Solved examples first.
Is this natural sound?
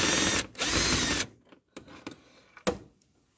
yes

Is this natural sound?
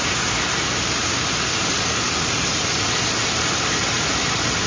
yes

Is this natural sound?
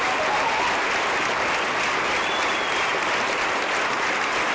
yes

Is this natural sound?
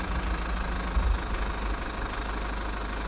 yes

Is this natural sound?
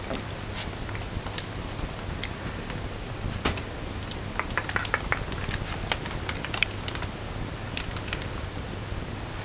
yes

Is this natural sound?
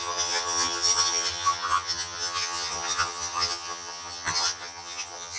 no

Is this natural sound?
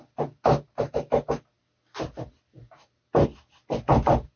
yes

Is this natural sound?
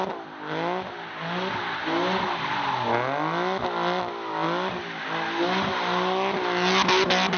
yes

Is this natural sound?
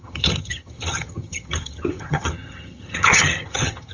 no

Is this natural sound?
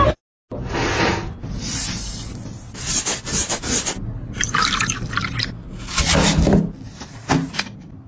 yes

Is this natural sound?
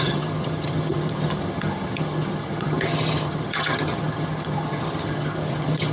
no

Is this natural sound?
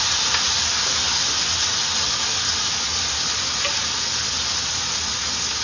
yes